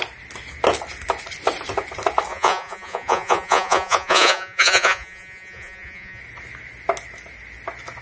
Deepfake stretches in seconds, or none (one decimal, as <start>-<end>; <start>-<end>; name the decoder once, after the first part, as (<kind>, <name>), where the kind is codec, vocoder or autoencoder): 2.3-6.2 (vocoder, Vocos)

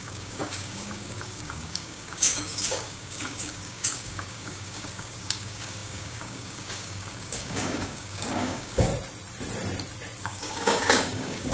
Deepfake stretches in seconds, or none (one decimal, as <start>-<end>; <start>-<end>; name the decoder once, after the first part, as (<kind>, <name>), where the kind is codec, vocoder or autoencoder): 0.0-8.9 (codec, DAC); 10.2-11.5